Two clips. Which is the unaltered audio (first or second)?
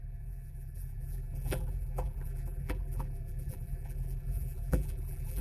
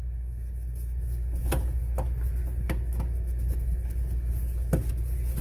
second